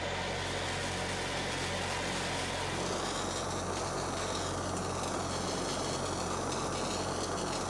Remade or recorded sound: recorded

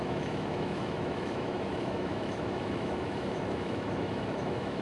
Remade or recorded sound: remade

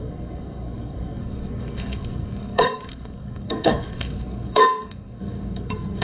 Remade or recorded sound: remade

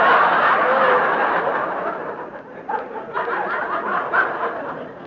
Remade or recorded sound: recorded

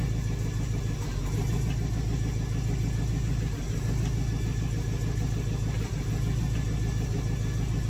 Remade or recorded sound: recorded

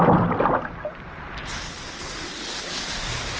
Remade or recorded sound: recorded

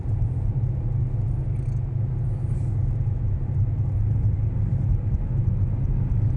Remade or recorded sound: recorded